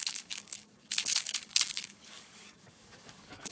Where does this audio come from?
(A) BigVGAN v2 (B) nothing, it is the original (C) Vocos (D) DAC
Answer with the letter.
D